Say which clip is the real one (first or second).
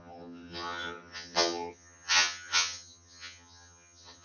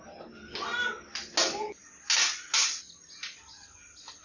second